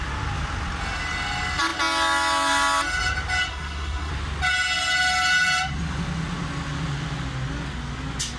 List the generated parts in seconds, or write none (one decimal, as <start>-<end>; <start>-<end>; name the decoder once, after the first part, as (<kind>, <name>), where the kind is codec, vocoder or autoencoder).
3.5-4.1 (codec, SNAC)